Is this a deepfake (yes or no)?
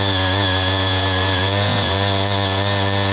yes